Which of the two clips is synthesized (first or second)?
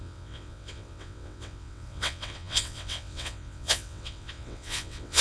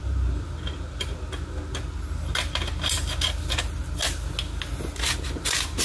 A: first